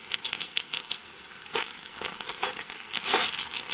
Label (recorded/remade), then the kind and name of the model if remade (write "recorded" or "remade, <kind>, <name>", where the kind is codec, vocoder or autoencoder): remade, codec, SNAC